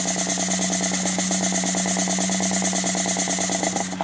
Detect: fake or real real